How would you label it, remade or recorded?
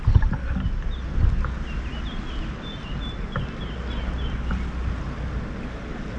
recorded